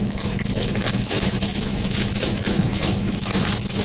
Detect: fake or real fake